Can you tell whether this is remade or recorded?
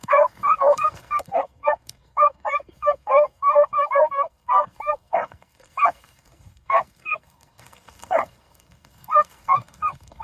remade